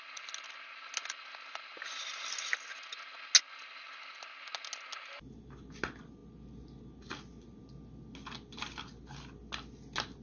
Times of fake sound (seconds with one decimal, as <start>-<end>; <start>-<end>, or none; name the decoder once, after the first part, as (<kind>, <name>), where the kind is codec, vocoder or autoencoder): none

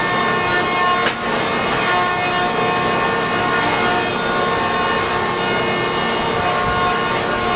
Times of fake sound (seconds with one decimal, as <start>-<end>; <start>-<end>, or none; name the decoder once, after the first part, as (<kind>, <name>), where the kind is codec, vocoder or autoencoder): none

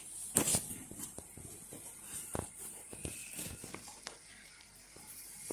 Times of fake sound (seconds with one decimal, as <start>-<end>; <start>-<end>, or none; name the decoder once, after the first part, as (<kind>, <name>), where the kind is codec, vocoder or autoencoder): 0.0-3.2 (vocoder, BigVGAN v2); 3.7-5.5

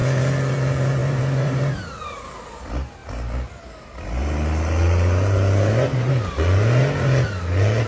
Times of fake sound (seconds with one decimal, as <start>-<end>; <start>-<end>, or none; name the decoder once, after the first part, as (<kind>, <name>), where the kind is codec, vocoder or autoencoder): 1.0-2.6 (vocoder, BigVGAN v2)

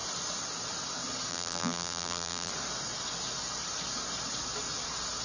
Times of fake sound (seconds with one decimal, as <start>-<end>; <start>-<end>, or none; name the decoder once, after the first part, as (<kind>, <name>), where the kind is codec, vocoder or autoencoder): 1.3-2.5 (vocoder, BigVGAN v2)

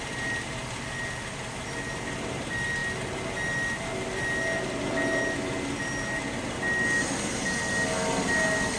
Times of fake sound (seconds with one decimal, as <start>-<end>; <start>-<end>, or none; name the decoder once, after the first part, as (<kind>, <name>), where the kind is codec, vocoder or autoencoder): none

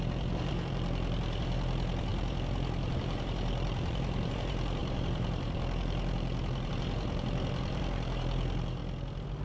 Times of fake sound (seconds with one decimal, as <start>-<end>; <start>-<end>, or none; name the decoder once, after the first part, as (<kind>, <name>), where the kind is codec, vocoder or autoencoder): 0.0-8.8 (vocoder, BigVGAN v2)